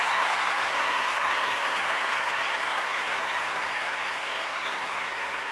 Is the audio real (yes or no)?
no